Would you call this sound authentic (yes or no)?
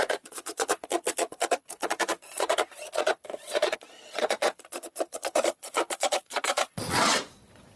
no